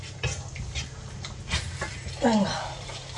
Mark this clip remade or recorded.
recorded